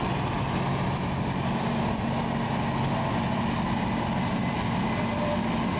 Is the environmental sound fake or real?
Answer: real